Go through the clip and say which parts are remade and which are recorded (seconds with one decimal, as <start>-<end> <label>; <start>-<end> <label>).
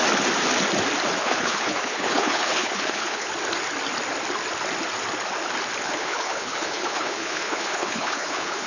0.0-1.2 recorded; 1.2-3.3 remade; 3.3-5.8 recorded; 5.8-8.7 remade